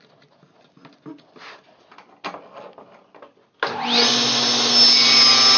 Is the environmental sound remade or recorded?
recorded